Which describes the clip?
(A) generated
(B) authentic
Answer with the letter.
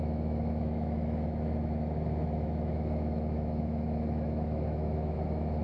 A